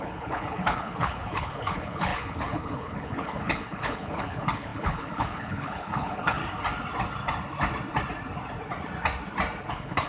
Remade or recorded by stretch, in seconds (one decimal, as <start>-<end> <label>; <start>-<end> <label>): 0.0-6.4 remade; 6.4-9.7 recorded; 9.7-10.1 remade